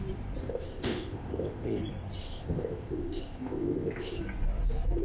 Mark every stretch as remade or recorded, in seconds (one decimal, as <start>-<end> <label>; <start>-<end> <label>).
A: 0.0-0.4 recorded; 0.4-1.8 remade; 1.8-2.2 recorded; 2.2-4.2 remade; 4.2-5.0 recorded